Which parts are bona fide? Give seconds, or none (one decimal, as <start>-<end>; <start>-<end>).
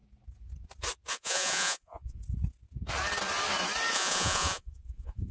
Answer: 0.0-1.1; 2.2-3.9